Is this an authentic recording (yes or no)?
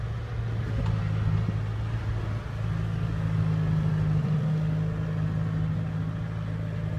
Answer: yes